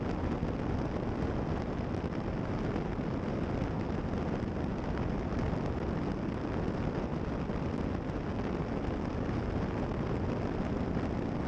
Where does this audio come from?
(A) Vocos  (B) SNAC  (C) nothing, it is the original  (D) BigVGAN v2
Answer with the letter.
C